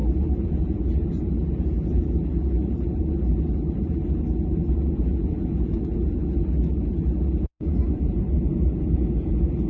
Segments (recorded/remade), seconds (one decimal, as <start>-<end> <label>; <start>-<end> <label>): 0.0-0.5 recorded; 0.5-2.2 remade; 2.2-4.9 recorded; 4.9-6.2 remade; 6.2-7.4 recorded; 7.4-9.7 remade